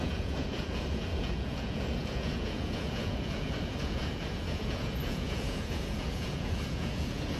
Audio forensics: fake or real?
fake